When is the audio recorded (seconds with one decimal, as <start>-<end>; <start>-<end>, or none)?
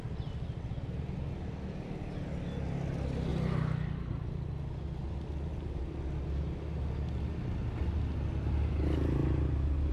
0.0-9.9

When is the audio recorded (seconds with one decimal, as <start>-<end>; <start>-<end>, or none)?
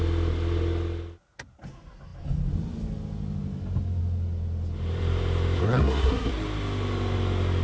0.0-5.6; 6.3-7.6